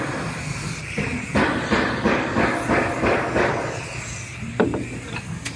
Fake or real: real